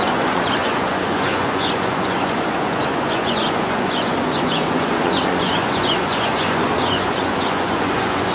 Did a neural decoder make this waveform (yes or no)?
yes